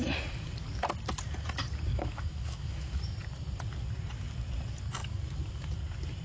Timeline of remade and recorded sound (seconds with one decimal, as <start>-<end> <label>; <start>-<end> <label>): 0.0-1.9 recorded; 1.9-3.0 remade; 3.0-6.2 recorded